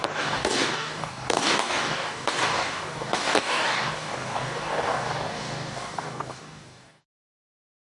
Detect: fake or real fake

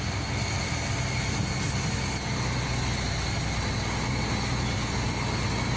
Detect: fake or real real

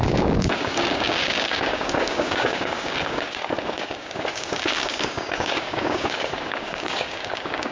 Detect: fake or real fake